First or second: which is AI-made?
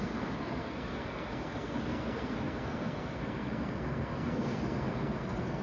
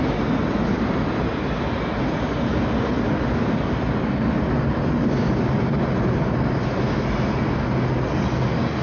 first